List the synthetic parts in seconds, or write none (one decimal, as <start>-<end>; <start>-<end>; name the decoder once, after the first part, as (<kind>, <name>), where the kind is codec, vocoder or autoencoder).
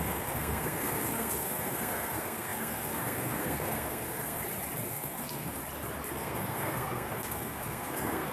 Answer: 0.0-4.4 (codec, SNAC); 4.9-5.6; 6.1-8.3